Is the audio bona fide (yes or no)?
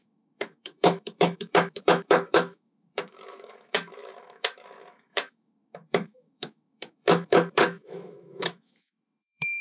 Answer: no